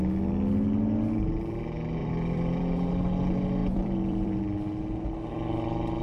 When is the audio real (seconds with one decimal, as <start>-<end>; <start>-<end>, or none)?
0.0-2.0; 2.9-3.6; 4.4-6.0